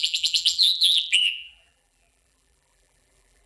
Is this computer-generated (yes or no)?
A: yes